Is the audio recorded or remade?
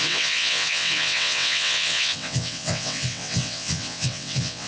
remade